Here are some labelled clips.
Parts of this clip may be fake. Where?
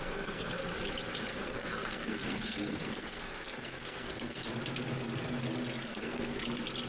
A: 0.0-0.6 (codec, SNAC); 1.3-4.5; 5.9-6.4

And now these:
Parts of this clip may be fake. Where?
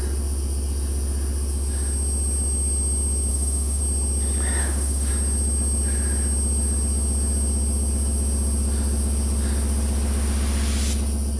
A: 3.3-3.8 (autoencoder, DAC-VAE); 4.6-5.1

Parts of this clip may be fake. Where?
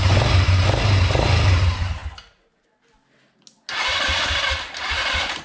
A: none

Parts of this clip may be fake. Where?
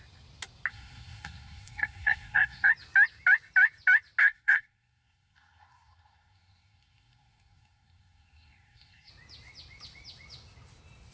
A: 0.7-2.7 (codec, SNAC); 4.2-9.1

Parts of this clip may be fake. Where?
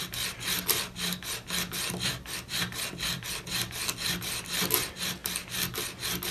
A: none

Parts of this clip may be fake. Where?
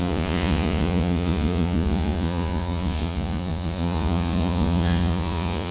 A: 0.0-5.7 (vocoder, Vocos)